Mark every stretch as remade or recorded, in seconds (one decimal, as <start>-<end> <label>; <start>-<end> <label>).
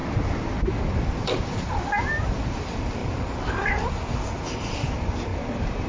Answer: 0.0-1.4 remade; 1.4-3.0 recorded; 3.0-3.9 remade; 3.9-5.3 recorded; 5.3-5.9 remade